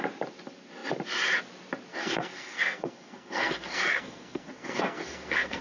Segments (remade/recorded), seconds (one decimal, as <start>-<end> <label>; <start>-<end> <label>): 0.0-1.9 recorded; 1.9-5.6 remade